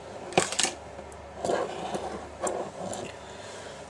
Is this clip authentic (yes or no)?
yes